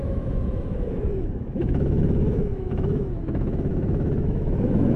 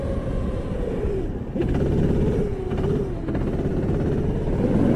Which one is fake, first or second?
first